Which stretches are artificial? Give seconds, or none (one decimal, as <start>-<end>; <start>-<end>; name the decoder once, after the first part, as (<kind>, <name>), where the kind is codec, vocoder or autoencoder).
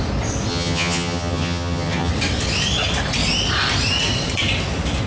0.5-2.1 (vocoder, HiFi-GAN)